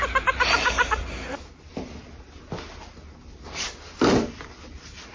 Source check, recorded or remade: remade